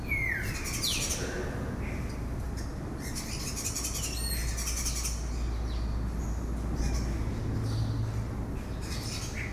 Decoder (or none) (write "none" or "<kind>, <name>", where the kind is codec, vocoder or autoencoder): none